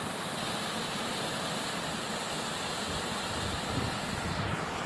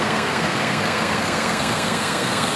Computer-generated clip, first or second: second